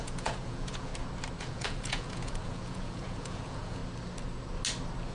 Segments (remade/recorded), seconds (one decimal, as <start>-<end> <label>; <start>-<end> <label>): 0.0-0.9 remade; 0.9-1.4 recorded; 1.4-3.8 remade; 3.8-5.1 recorded